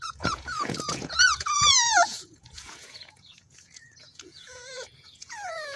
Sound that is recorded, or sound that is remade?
remade